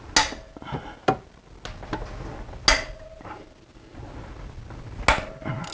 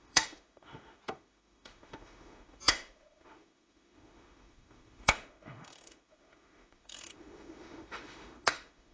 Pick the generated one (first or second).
second